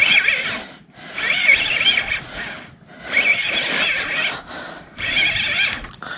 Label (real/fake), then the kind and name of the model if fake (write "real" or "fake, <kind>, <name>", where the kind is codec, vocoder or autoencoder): real